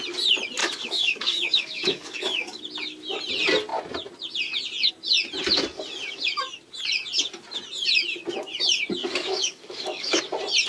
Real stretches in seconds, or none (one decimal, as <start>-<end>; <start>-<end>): 0.0-0.6; 2.6-9.0; 10.2-10.7